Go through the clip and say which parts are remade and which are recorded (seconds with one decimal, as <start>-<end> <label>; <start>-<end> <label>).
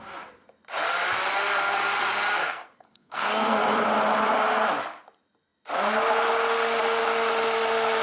0.0-2.4 recorded; 2.4-3.6 remade; 3.6-8.0 recorded